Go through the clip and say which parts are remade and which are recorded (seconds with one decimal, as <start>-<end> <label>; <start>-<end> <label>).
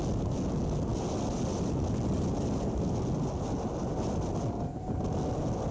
0.0-5.7 recorded